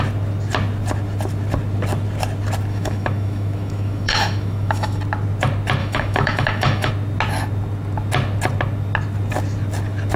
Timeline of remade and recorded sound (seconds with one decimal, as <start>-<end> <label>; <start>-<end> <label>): 0.0-2.7 recorded; 2.7-5.0 remade; 5.0-5.8 recorded; 5.8-6.9 remade; 6.9-10.2 recorded